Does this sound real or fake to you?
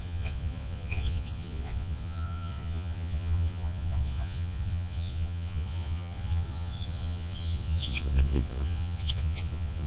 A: fake